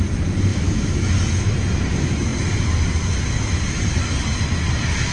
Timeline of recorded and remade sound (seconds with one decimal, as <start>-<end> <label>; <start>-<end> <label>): 0.0-0.5 recorded; 0.5-1.1 remade; 1.1-5.1 recorded